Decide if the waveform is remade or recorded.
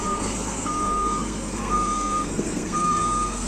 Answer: remade